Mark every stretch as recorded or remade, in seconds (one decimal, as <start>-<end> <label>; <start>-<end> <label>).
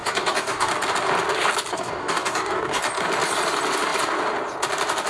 0.0-0.7 remade; 0.7-1.7 recorded; 1.7-2.8 remade; 2.8-5.1 recorded